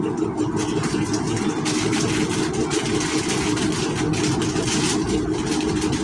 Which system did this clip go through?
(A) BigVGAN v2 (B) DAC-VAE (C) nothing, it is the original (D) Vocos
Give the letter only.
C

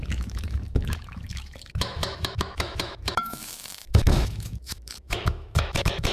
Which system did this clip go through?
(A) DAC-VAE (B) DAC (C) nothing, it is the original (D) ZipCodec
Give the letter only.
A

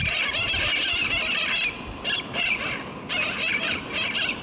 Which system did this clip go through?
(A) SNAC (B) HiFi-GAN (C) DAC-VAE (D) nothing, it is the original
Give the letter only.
D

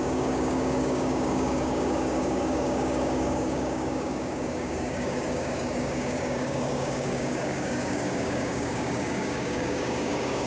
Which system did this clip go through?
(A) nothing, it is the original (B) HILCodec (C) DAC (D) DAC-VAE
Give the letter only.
C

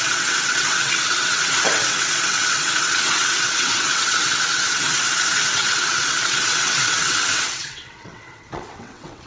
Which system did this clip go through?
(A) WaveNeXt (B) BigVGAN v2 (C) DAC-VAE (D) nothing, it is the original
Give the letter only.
A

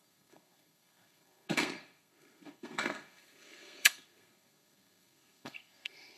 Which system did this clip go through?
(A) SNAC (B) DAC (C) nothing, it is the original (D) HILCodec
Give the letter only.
A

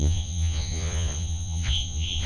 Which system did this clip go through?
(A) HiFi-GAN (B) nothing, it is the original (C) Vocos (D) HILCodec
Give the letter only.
C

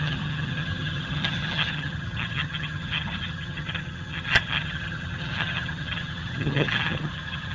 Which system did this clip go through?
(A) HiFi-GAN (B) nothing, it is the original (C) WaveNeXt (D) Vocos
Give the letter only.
A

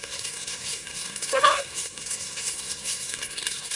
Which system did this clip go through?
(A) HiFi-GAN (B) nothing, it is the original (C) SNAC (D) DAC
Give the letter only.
C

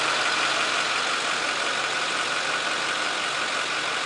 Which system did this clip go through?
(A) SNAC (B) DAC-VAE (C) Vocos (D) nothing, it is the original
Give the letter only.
D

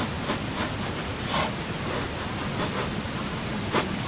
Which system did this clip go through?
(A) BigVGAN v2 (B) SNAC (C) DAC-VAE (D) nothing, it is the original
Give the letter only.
D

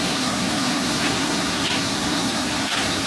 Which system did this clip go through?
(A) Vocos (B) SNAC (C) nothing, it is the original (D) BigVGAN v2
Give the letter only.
B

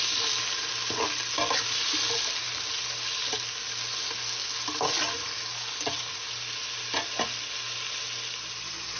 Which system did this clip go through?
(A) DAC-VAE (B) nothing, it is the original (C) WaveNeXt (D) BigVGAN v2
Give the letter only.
B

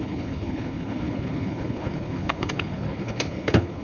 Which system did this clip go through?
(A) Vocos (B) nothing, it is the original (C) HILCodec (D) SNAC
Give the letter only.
C